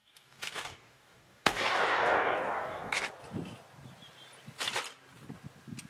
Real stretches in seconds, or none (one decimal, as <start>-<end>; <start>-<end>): 3.1-5.9